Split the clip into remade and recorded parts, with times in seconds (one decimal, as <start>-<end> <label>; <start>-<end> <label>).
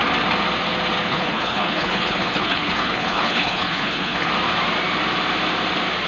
0.0-1.0 recorded; 1.0-4.3 remade; 4.3-6.1 recorded